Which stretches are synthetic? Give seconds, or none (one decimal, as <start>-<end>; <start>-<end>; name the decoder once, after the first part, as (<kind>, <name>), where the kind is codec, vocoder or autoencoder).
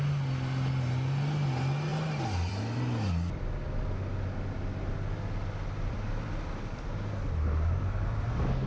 none